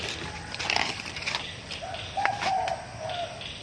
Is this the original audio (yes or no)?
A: yes